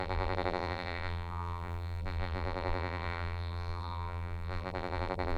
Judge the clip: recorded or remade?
remade